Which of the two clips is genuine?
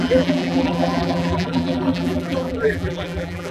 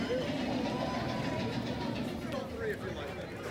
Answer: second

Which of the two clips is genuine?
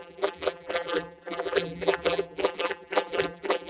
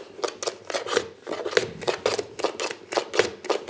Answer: second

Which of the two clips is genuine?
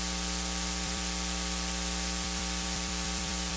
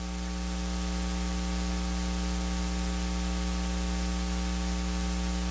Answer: second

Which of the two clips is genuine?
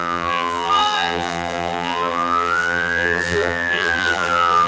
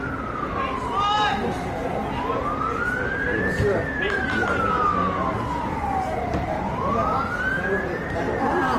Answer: second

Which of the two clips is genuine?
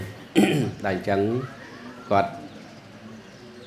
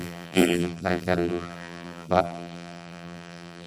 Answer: first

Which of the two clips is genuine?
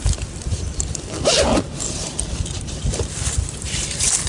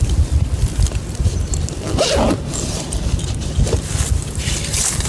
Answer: second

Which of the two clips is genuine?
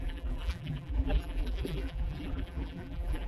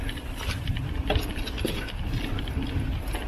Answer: second